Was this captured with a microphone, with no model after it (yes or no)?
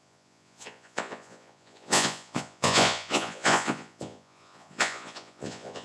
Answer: no